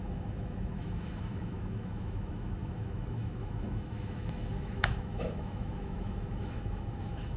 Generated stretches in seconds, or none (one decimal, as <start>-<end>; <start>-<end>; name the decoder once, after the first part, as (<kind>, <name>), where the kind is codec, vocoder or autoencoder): 0.0-7.4 (autoencoder, DAC-VAE)